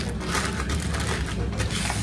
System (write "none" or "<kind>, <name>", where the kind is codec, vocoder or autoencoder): none